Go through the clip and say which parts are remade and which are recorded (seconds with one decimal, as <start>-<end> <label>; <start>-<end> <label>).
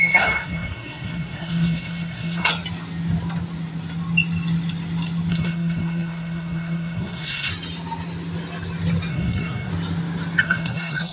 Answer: 0.0-2.5 remade; 2.5-5.3 recorded; 5.3-7.5 remade; 7.5-9.1 recorded; 9.1-9.7 remade; 9.7-10.4 recorded; 10.4-11.1 remade